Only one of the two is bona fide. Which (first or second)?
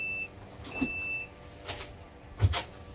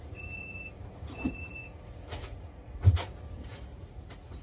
first